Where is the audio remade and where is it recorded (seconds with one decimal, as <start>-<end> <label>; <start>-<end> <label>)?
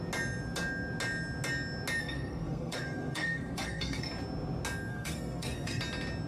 0.0-2.0 recorded; 2.0-4.1 remade; 4.1-4.9 recorded; 4.9-5.8 remade; 5.8-6.3 recorded